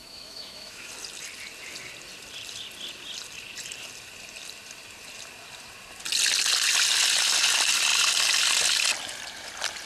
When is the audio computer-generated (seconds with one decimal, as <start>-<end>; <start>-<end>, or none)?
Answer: 0.0-0.9